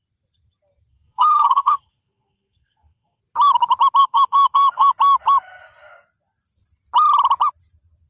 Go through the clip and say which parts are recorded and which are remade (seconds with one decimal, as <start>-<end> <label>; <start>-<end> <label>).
0.0-0.9 recorded; 0.9-3.2 remade; 3.2-4.0 recorded; 4.0-4.9 remade; 4.9-8.1 recorded